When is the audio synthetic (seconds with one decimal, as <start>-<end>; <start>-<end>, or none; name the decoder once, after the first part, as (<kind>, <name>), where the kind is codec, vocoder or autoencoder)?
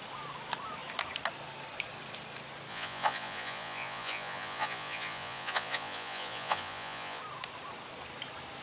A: 2.7-7.2 (vocoder, Vocos)